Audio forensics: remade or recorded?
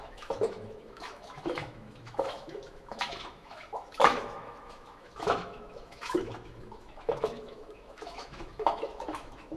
remade